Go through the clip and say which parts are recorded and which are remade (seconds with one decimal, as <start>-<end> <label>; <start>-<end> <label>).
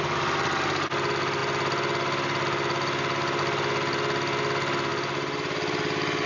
0.0-6.3 recorded